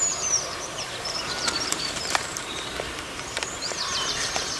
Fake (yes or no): yes